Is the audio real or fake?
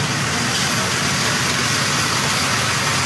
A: real